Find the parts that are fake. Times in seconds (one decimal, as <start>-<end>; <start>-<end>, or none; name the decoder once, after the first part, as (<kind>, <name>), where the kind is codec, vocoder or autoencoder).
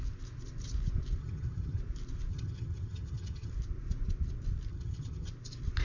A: 1.2-1.8 (vocoder, HiFi-GAN); 2.3-3.5; 4.7-5.3